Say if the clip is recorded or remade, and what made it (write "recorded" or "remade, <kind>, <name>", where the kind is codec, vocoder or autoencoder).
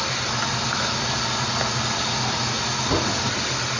recorded